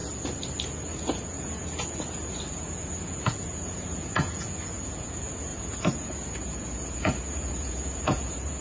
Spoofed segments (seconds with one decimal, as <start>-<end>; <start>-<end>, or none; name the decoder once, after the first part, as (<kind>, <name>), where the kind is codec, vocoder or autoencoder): 0.6-8.6 (vocoder, Vocos)